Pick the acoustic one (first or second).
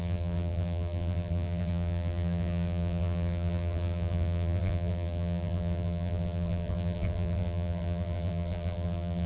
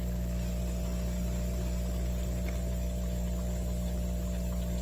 second